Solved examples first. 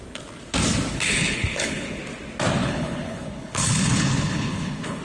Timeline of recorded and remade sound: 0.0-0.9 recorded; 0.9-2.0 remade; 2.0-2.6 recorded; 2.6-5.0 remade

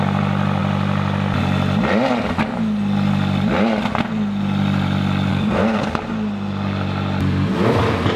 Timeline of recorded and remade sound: 0.0-5.3 recorded; 5.3-5.9 remade; 5.9-8.2 recorded

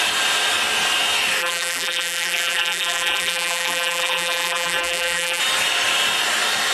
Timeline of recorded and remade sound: 0.0-1.4 recorded; 1.4-5.4 remade; 5.4-6.7 recorded

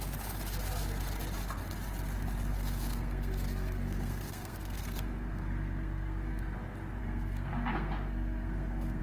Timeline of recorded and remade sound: 0.0-2.5 recorded; 2.5-6.4 remade; 6.4-7.0 recorded; 7.0-9.0 remade

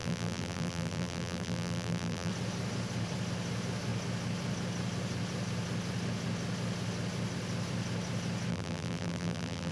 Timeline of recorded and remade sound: 0.0-2.3 remade; 2.3-8.5 recorded; 8.5-9.7 remade

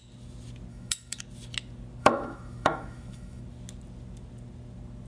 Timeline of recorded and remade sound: 0.0-0.7 recorded; 0.7-1.2 remade; 1.2-2.0 recorded; 2.0-3.4 remade; 3.4-5.1 recorded

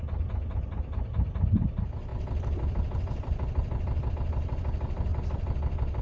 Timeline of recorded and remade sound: 0.0-2.1 recorded; 2.1-4.1 remade; 4.1-5.1 recorded; 5.1-6.0 remade

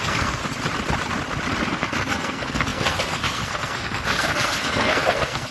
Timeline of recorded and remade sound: 0.0-0.4 remade; 0.4-1.7 recorded; 1.7-5.5 remade